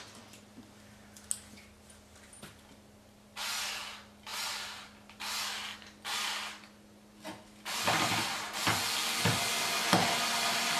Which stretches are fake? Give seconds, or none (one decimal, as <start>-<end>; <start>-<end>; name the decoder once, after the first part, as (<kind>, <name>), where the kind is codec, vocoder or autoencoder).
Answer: none